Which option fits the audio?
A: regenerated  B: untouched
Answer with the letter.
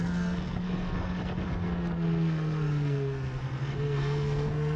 A